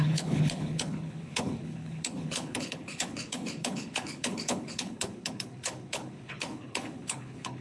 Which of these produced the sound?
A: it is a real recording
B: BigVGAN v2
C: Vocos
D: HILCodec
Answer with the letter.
D